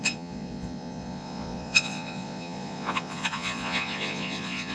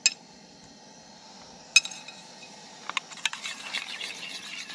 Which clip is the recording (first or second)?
second